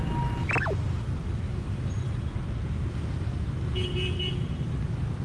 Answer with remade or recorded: recorded